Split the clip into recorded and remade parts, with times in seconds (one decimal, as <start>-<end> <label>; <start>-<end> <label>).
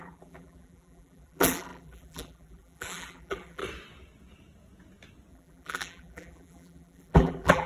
0.0-3.6 remade; 3.6-5.3 recorded; 5.3-7.7 remade